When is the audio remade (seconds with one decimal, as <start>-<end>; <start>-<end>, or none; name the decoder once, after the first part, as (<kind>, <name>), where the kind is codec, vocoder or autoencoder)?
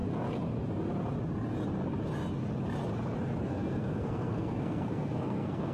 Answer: 3.4-5.7 (codec, SNAC)